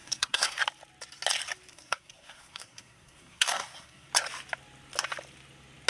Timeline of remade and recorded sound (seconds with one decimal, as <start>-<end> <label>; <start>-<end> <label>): 0.0-0.6 remade; 0.6-1.7 recorded; 1.7-4.1 remade; 4.1-5.9 recorded